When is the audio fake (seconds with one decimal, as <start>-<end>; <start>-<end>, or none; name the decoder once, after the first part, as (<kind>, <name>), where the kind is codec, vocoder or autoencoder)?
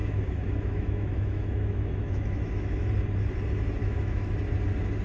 0.0-2.9 (autoencoder, DAC-VAE); 3.8-4.3